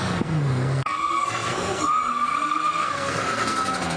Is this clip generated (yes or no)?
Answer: yes